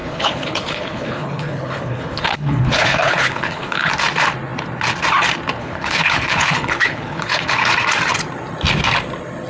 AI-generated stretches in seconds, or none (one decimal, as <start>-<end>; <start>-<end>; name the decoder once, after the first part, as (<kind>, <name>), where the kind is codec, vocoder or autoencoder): 0.0-3.9 (codec, HILCodec); 5.6-7.4